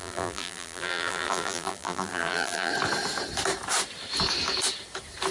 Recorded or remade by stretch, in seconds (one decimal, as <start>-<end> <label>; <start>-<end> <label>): 0.0-2.7 remade; 2.7-5.3 recorded